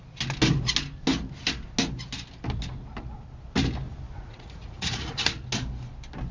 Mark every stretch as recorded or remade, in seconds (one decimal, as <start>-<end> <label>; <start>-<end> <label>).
0.0-4.3 recorded; 4.3-5.1 remade; 5.1-6.3 recorded